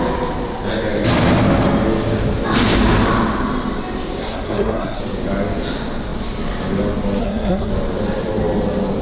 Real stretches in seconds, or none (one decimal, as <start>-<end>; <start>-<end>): 0.0-4.2; 5.0-7.2; 7.7-9.0